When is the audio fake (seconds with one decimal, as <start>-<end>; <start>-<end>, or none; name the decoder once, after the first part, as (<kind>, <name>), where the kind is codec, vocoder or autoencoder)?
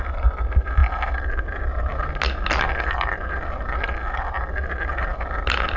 none